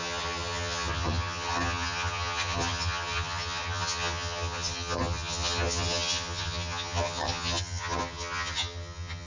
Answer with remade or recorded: remade